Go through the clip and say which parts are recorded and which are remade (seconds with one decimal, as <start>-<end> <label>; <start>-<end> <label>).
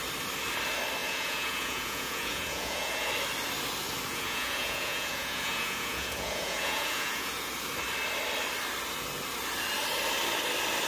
0.0-1.0 recorded; 1.0-3.1 remade; 3.1-4.1 recorded; 4.1-7.5 remade; 7.5-10.9 recorded